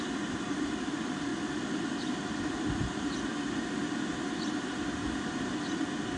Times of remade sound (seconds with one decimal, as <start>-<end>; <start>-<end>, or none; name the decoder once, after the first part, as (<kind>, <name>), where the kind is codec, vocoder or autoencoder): none

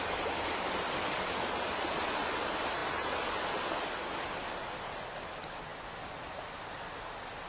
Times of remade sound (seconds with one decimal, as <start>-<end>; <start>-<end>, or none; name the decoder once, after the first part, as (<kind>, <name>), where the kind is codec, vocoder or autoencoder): none

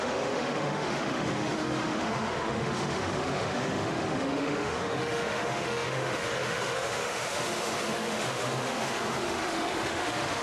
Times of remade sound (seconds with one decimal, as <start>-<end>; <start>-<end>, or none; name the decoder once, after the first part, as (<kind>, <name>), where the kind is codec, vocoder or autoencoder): 0.0-10.4 (autoencoder, DAC-VAE)

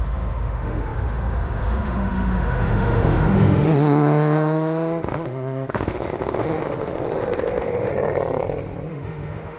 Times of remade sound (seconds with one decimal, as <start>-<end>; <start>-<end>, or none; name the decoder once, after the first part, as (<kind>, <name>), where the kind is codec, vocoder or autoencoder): 0.0-7.9 (autoencoder, DAC-VAE); 8.9-9.6